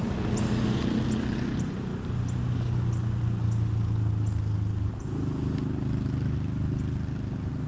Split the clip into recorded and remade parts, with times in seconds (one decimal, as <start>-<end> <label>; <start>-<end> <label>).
0.0-7.7 recorded